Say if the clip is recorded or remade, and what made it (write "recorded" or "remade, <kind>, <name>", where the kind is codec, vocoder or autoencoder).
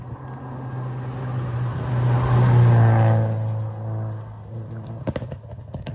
recorded